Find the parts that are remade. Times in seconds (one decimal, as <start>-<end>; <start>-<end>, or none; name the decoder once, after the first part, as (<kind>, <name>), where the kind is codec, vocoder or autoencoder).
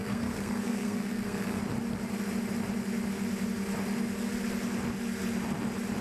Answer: 0.0-1.6 (codec, SNAC)